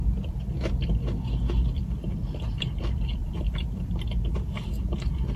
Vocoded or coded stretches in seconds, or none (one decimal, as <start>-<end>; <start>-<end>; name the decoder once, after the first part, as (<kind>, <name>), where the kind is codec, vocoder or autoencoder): 3.2-3.9 (vocoder, BigVGAN v2)

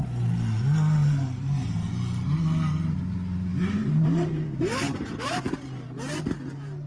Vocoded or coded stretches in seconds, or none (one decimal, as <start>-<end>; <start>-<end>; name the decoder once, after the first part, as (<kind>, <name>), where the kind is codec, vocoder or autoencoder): 1.0-1.8 (vocoder, BigVGAN v2); 3.5-5.4

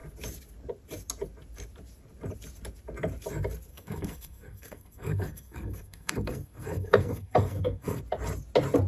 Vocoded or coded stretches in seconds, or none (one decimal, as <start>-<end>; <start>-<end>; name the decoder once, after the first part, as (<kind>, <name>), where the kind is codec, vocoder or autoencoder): 3.7-8.0 (codec, SNAC)

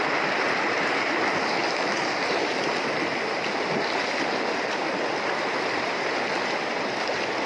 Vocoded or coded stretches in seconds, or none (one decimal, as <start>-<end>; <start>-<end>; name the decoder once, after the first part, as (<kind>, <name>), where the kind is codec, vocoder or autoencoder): none

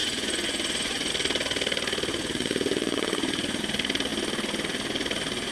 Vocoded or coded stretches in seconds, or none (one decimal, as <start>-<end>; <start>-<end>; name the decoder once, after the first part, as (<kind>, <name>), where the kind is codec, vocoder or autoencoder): 0.0-1.1 (vocoder, Vocos); 2.1-3.6

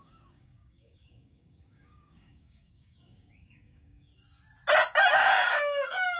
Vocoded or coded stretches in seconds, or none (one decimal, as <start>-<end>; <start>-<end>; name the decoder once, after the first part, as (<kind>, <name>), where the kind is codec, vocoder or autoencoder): 0.0-4.1 (codec, DAC); 5.1-6.2

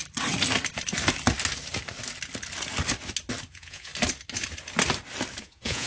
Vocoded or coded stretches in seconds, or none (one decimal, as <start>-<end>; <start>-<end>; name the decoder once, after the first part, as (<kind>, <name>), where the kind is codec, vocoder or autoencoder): 3.5-3.9 (vocoder, Vocos); 5.4-5.9